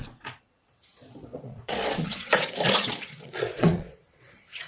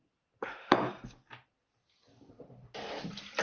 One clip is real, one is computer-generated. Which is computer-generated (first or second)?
first